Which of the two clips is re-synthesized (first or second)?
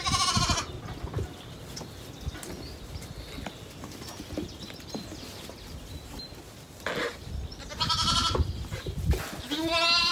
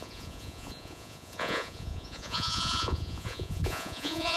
second